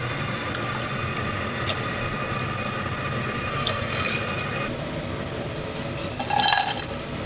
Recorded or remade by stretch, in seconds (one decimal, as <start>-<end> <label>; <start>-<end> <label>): 0.0-3.5 recorded; 3.5-4.1 remade; 4.1-7.3 recorded